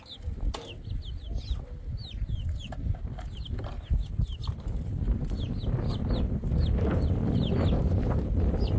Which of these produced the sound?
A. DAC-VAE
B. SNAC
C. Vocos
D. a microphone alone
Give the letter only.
D